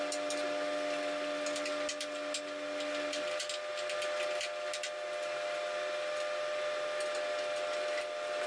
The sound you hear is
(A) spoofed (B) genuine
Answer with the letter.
B